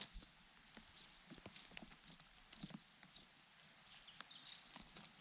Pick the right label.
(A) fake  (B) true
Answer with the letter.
B